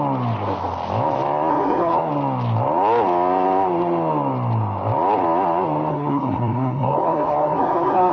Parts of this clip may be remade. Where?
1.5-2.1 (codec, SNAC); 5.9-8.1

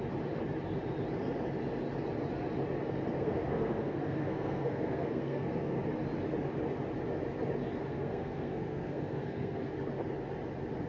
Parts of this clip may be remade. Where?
3.1-5.8 (codec, SNAC); 7.8-9.7

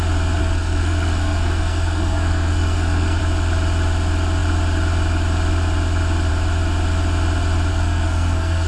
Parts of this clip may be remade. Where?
0.4-3.2 (codec, SNAC); 7.7-8.7

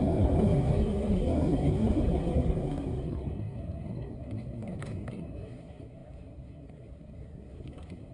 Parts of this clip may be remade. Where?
0.0-8.1 (codec, SNAC)

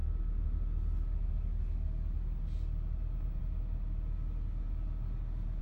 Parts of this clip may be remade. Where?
none

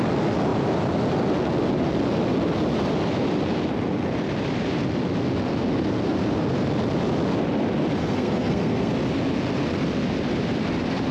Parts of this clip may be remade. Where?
8.0-8.9 (codec, SNAC)

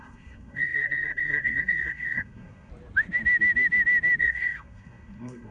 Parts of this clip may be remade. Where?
0.0-2.7 (codec, SNAC); 4.2-5.5